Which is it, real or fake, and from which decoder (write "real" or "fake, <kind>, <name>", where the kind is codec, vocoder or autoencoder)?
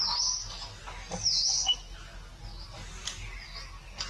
real